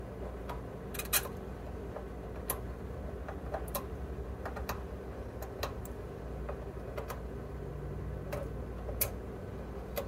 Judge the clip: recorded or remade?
recorded